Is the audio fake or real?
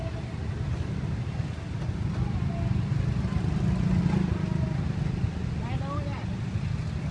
real